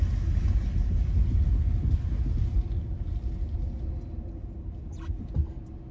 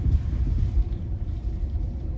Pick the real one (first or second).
first